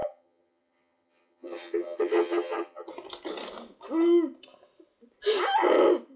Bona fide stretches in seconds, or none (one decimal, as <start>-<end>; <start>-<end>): 2.9-6.2